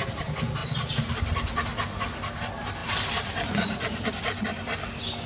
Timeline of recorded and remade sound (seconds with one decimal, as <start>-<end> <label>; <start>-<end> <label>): 0.0-5.3 remade